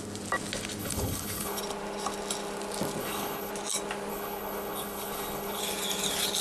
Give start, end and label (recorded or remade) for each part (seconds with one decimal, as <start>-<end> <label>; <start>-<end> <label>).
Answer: 0.0-0.8 recorded; 0.8-1.6 remade; 1.6-3.0 recorded; 3.0-3.5 remade; 3.5-4.1 recorded; 4.1-5.6 remade; 5.6-6.4 recorded